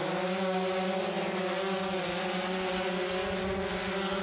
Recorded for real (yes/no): yes